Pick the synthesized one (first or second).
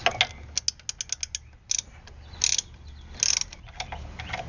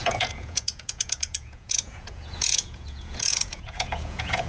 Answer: second